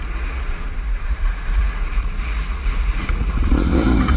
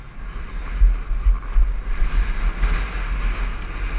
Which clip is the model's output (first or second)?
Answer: first